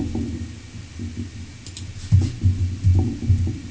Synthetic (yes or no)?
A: no